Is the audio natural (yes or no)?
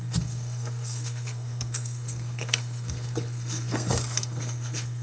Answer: no